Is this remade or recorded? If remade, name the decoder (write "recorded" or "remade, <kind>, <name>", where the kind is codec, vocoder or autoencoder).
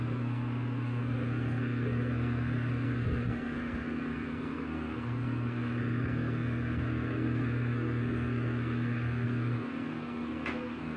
remade, codec, SNAC